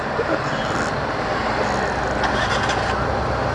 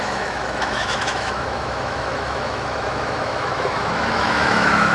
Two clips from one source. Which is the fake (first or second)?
second